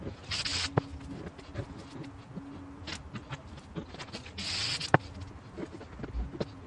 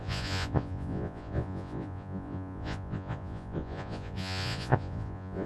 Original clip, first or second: first